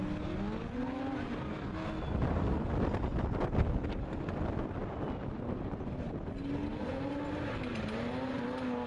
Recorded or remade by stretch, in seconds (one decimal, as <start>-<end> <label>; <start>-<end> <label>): 0.0-8.9 recorded